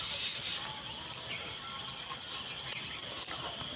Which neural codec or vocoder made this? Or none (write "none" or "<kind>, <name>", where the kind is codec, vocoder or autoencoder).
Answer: none